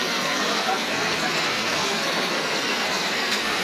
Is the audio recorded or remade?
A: remade